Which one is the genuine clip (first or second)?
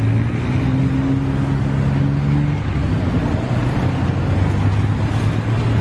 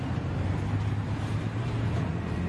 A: first